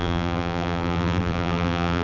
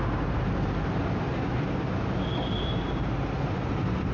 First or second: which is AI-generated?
first